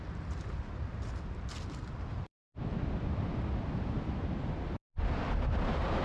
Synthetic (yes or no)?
yes